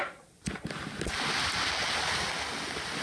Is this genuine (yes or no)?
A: yes